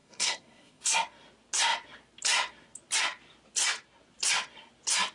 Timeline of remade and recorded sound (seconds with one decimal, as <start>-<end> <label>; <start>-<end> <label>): 0.0-0.8 remade; 0.8-5.1 recorded